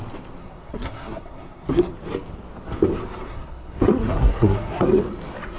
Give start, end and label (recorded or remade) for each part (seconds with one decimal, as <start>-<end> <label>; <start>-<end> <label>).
0.0-0.4 recorded; 0.4-1.9 remade; 1.9-3.3 recorded; 3.3-5.0 remade; 5.0-5.6 recorded